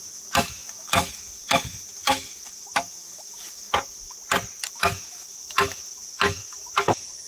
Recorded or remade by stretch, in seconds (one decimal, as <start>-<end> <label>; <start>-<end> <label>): 0.0-4.2 remade; 4.2-4.7 recorded; 4.7-7.3 remade